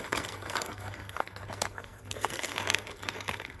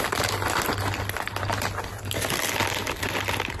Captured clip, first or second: second